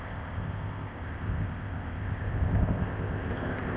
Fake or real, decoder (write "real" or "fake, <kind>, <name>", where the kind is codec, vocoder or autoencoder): fake, codec, ZipCodec